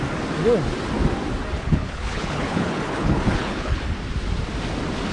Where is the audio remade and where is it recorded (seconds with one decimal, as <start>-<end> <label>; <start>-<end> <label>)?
0.0-1.6 recorded; 1.6-3.8 remade; 3.8-5.1 recorded